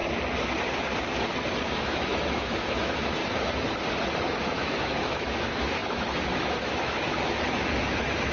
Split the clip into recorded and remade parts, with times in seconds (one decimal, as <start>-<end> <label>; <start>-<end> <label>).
0.0-1.7 recorded; 1.7-3.2 remade; 3.2-4.4 recorded; 4.4-8.3 remade